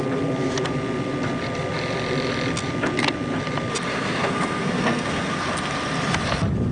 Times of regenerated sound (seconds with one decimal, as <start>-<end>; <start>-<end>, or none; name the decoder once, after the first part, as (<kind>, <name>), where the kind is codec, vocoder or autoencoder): 3.9-5.5 (codec, SNAC)